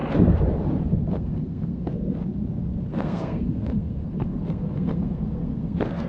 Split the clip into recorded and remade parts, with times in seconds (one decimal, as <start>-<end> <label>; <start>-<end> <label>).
0.0-1.1 recorded; 1.1-1.9 remade; 1.9-2.9 recorded; 2.9-6.1 remade